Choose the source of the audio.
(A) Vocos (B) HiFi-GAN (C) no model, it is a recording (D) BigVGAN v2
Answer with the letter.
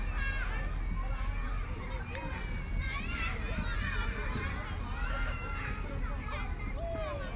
C